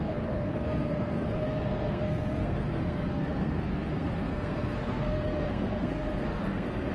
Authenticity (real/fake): fake